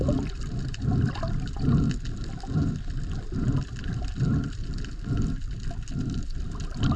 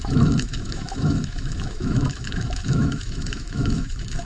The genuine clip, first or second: first